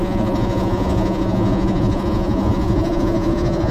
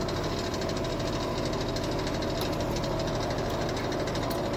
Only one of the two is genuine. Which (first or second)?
second